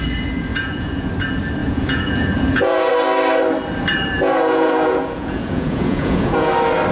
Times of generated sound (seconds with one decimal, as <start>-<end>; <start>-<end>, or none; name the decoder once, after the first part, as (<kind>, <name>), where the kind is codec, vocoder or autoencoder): 0.5-1.1 (vocoder, Vocos); 1.6-2.9; 3.9-6.5